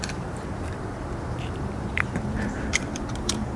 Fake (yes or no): yes